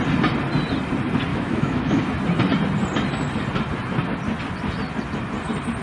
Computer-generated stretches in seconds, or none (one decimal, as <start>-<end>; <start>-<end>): 1.3-2.0